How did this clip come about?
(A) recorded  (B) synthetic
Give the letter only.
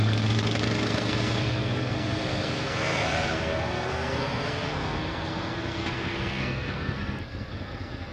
B